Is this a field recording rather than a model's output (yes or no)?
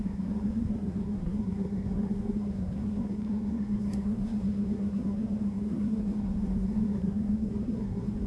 no